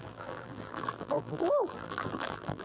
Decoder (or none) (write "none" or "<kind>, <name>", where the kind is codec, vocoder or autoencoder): vocoder, BigVGAN v2